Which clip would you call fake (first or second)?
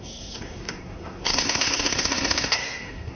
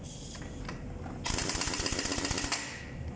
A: first